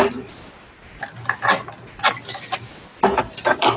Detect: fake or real real